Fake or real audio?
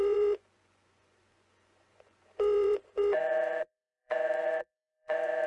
fake